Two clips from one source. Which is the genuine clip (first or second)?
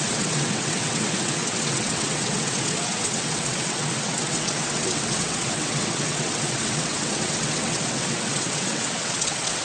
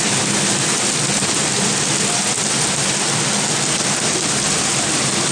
second